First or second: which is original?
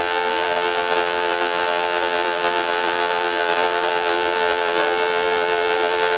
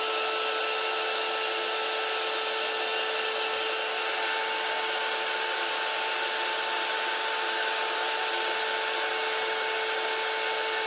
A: second